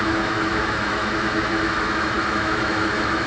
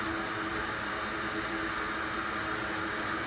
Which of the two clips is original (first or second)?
second